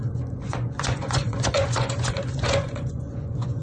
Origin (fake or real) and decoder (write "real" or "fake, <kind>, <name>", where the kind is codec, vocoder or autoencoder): fake, vocoder, Vocos